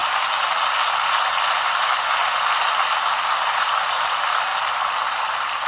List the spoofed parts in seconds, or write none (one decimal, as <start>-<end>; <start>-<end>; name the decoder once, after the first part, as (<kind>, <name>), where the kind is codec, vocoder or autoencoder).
none